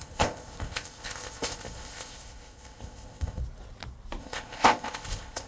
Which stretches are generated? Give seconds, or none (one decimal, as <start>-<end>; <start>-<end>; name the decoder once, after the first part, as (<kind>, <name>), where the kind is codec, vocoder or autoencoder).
0.0-3.4 (codec, ZipCodec); 4.2-5.5